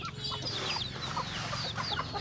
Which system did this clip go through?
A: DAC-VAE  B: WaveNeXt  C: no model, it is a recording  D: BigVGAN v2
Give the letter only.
C